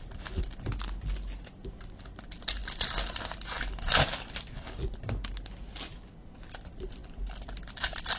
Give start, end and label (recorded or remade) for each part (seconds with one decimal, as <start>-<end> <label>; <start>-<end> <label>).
0.0-8.2 recorded